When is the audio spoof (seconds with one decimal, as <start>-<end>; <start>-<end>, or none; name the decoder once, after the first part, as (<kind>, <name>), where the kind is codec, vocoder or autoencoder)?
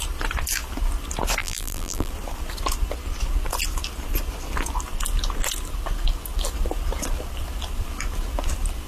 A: 1.4-2.1 (vocoder, BigVGAN v2)